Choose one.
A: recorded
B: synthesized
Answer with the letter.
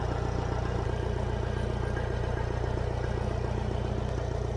A